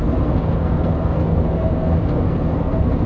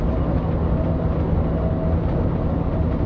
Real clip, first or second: second